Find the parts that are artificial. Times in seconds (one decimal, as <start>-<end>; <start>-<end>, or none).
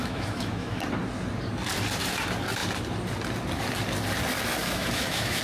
0.0-0.8; 4.6-5.4